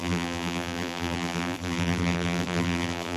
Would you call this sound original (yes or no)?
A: no